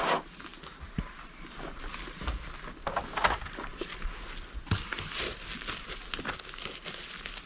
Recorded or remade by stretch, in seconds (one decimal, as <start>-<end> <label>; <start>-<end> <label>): 0.0-7.5 recorded